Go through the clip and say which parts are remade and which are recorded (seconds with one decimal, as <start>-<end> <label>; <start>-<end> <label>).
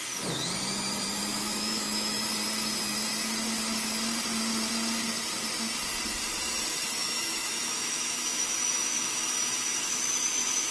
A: 0.0-1.2 recorded; 1.2-2.3 remade; 2.3-7.0 recorded; 7.0-10.7 remade